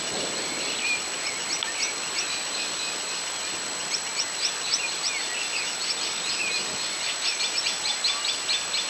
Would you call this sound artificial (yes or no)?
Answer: no